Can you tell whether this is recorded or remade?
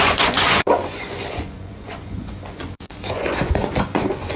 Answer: remade